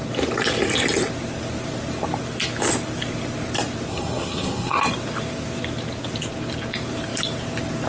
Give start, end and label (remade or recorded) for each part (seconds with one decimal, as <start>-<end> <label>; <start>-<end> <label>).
0.0-3.9 recorded; 3.9-4.8 remade; 4.8-7.9 recorded